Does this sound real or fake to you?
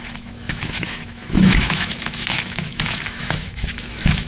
fake